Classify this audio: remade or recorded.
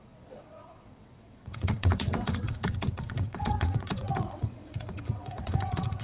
remade